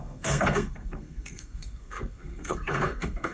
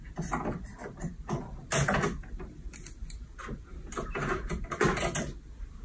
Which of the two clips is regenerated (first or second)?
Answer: first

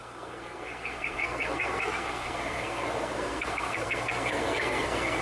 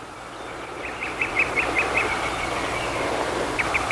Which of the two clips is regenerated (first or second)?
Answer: first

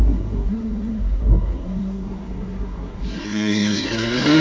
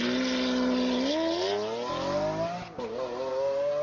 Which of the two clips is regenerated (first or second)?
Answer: first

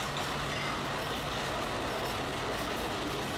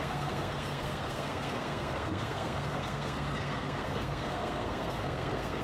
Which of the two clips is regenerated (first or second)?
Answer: second